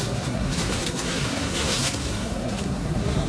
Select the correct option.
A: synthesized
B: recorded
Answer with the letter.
A